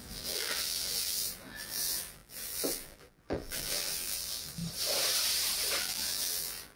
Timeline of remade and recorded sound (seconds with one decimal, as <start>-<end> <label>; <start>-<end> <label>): 0.0-4.6 remade; 4.6-5.8 recorded; 5.8-6.8 remade